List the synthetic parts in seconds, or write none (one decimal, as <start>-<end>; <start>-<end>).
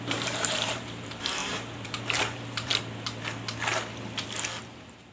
0.0-2.7; 4.6-5.1